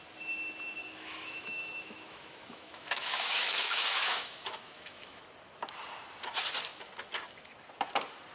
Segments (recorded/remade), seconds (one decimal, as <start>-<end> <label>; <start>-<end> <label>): 0.0-0.8 recorded; 0.8-5.2 remade; 5.2-8.3 recorded